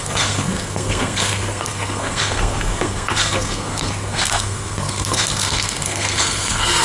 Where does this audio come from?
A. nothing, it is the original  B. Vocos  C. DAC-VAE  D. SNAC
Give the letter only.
D